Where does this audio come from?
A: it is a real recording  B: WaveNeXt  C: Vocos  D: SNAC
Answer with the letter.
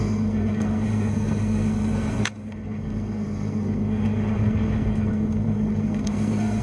D